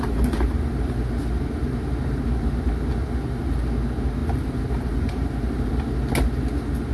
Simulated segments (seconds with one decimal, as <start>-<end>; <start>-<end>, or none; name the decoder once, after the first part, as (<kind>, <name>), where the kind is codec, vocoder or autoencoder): 4.2-5.7 (vocoder, BigVGAN v2)